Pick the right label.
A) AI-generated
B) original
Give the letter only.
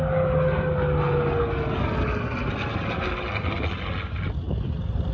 B